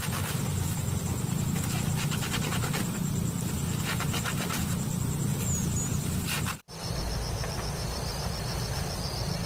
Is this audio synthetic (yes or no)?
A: no